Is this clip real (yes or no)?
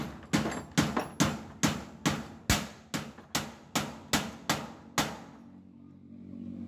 yes